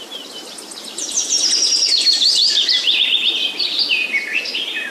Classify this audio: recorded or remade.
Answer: recorded